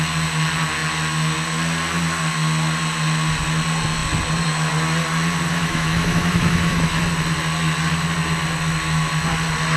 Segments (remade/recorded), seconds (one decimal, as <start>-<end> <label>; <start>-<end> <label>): 0.0-5.5 recorded; 5.5-7.0 remade; 7.0-9.8 recorded